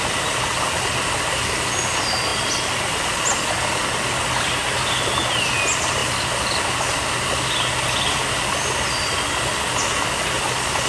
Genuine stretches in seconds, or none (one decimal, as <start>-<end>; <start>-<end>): 0.0-10.9